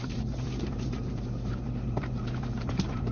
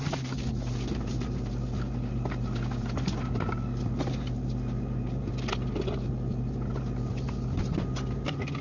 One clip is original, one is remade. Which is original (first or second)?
second